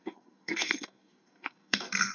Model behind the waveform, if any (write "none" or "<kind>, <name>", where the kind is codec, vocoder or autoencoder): codec, SNAC